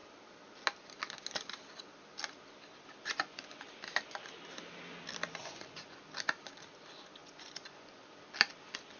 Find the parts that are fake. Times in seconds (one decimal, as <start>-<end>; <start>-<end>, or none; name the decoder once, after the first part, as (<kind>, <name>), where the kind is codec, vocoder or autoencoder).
3.0-3.6 (vocoder, Vocos); 5.4-6.0; 7.2-8.0